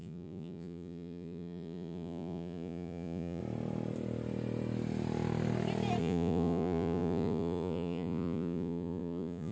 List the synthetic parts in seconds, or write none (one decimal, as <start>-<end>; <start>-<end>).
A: 0.0-3.4; 6.0-9.5